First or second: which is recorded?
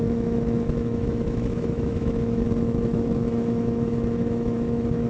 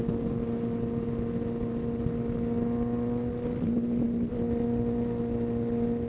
second